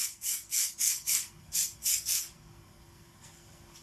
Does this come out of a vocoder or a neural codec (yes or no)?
yes